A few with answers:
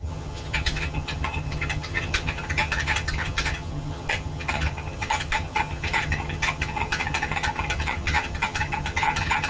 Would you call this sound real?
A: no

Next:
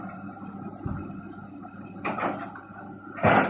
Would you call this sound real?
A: yes